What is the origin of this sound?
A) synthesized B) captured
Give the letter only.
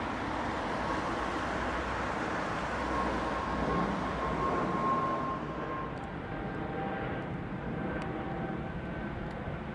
B